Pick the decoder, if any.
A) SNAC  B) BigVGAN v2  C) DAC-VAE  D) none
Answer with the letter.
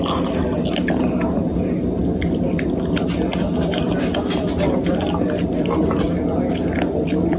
D